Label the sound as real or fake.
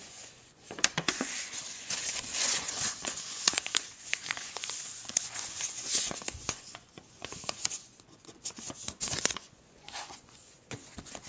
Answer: fake